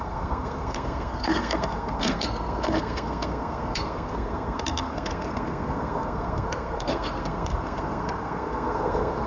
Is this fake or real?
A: fake